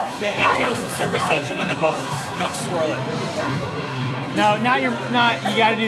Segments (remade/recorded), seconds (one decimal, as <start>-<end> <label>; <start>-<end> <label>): 0.0-2.6 remade; 2.6-3.4 recorded; 3.4-4.3 remade; 4.3-5.9 recorded